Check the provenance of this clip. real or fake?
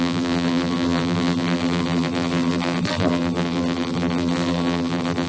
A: fake